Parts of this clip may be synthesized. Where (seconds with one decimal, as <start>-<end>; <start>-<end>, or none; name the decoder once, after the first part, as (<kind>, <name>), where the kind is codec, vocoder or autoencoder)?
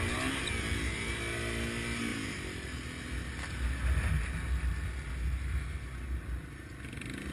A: none